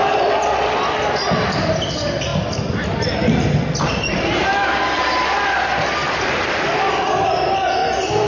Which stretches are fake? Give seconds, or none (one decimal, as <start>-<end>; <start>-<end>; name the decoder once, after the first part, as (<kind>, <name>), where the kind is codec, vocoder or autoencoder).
none